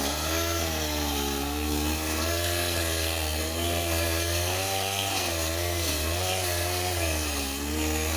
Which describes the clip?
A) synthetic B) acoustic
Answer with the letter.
A